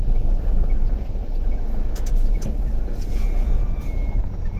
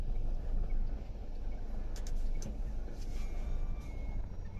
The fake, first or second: first